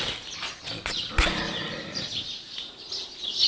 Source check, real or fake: real